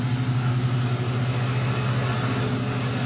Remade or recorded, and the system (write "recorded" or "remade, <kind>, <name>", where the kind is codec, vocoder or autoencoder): recorded